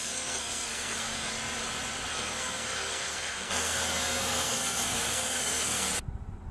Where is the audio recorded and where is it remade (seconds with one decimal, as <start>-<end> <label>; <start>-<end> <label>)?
0.0-1.3 remade; 1.3-2.1 recorded; 2.1-5.9 remade; 5.9-6.5 recorded